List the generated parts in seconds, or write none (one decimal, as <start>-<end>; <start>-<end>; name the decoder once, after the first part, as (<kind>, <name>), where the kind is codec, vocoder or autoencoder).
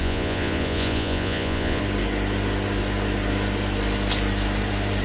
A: 0.0-1.8 (vocoder, Vocos)